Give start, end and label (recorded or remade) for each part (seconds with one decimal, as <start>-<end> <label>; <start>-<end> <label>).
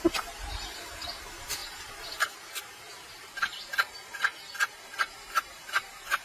0.0-6.2 remade